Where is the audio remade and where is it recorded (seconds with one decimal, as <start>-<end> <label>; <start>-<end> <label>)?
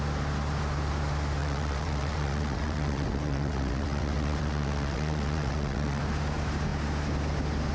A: 0.0-1.4 recorded; 1.4-6.0 remade; 6.0-7.7 recorded